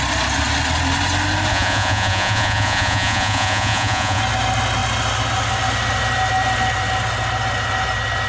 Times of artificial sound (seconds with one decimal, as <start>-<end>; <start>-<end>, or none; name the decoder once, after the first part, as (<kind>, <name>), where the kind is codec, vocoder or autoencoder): 1.5-4.2 (vocoder, Vocos)